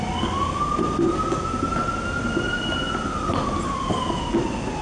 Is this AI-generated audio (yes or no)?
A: no